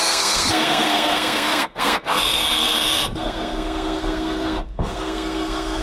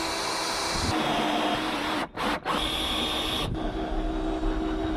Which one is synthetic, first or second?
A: first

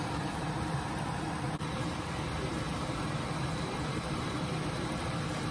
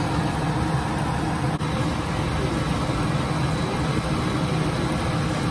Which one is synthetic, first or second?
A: first